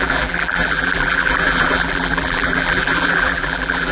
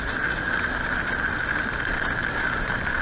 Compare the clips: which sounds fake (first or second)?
first